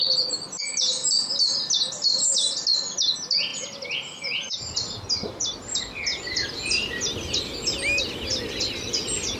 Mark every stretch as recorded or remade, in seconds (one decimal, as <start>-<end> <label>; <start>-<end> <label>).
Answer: 0.0-9.4 recorded